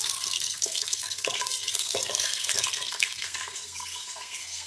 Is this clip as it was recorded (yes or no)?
no